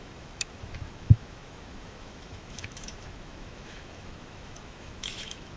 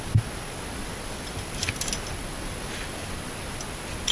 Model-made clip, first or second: first